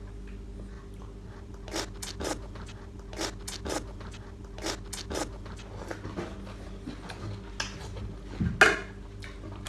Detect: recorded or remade recorded